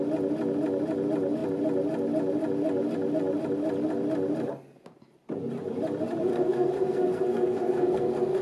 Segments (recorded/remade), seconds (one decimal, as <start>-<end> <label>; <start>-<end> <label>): 0.0-6.3 recorded; 6.3-8.4 remade